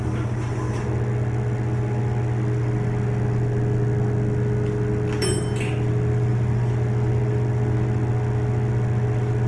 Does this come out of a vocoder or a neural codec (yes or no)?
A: no